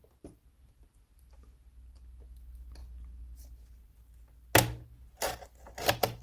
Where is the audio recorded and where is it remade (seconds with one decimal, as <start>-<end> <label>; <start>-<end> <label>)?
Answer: 0.0-6.2 recorded